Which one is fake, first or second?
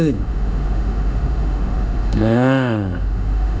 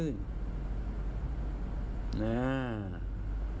first